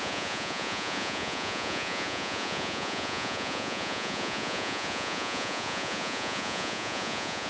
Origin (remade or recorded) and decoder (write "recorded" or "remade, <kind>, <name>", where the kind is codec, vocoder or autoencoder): remade, vocoder, Vocos